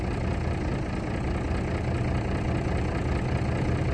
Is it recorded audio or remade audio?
recorded